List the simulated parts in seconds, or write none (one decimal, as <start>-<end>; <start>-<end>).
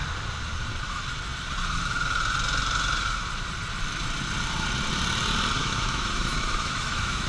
5.6-7.3